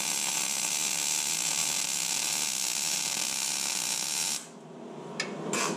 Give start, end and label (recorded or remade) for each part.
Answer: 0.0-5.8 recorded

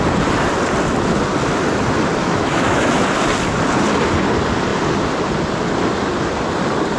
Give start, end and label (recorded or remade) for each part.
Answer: 0.0-2.2 recorded; 2.2-3.0 remade; 3.0-7.0 recorded

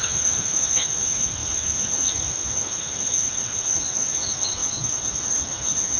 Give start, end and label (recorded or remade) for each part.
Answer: 0.0-6.0 remade

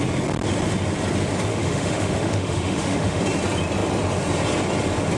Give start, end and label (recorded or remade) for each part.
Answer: 0.0-1.5 recorded; 1.5-3.2 remade; 3.2-5.2 recorded

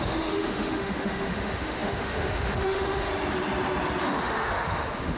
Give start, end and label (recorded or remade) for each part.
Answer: 0.0-3.1 remade; 3.1-4.0 recorded; 4.0-5.2 remade